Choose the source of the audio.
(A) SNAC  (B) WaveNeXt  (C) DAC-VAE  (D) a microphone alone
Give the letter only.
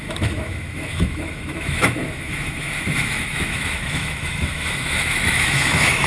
C